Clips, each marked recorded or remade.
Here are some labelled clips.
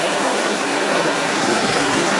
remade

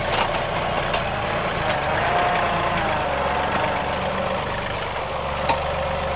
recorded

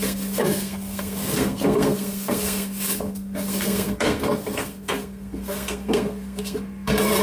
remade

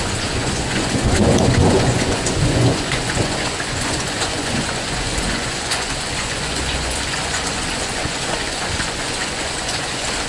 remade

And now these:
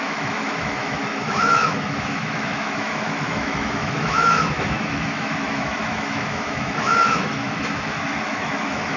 remade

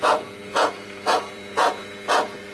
remade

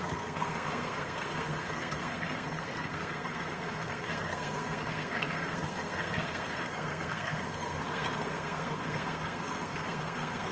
remade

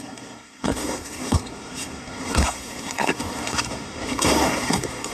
remade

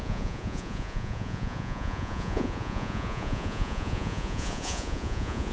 remade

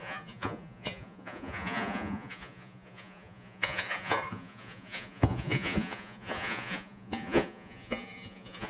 remade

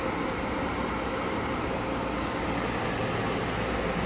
recorded